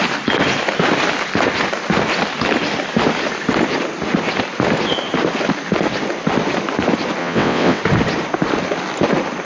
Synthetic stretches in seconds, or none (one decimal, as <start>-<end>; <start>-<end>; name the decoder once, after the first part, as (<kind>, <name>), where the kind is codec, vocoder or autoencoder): 7.2-7.8 (vocoder, WaveNeXt)